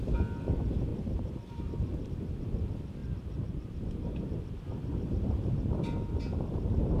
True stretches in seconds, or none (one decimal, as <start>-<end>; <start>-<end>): 0.0-0.9; 2.1-3.0; 4.6-7.0